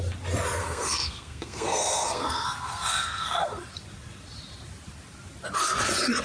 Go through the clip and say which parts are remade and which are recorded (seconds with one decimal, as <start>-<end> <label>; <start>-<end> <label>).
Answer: 0.0-0.6 recorded; 0.6-3.6 remade; 3.6-6.2 recorded